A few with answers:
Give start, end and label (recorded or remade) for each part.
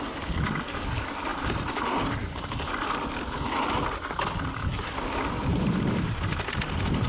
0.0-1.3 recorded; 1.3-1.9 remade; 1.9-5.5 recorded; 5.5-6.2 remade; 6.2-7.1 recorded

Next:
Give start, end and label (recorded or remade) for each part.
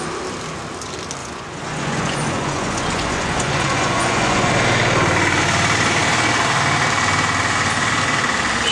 0.0-1.2 recorded; 1.2-4.5 remade; 4.5-8.7 recorded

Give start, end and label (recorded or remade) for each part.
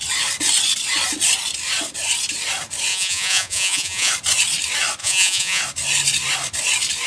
0.0-2.9 recorded; 2.9-4.1 remade; 4.1-5.0 recorded; 5.0-5.6 remade; 5.6-7.1 recorded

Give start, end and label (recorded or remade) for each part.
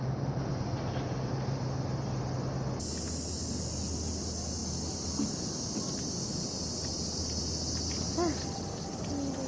0.0-0.5 recorded; 0.5-2.2 remade; 2.2-9.5 recorded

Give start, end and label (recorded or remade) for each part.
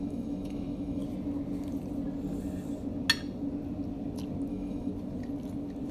0.0-1.0 remade; 1.0-4.5 recorded; 4.5-4.9 remade; 4.9-5.9 recorded